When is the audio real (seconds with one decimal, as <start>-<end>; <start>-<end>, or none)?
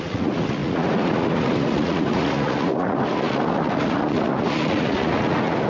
none